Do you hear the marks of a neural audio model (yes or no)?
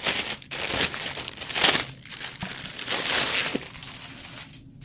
no